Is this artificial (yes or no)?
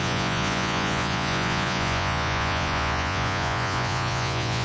yes